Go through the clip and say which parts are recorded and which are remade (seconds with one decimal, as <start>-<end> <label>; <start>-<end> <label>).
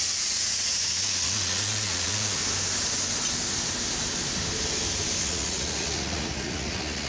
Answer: 0.0-2.4 remade; 2.4-5.2 recorded; 5.2-7.1 remade